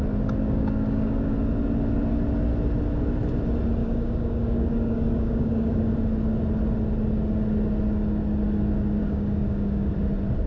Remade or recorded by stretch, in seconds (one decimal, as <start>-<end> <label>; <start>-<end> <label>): 0.0-0.4 recorded; 0.4-1.3 remade; 1.3-3.8 recorded; 3.8-5.8 remade; 5.8-9.0 recorded; 9.0-9.9 remade; 9.9-10.5 recorded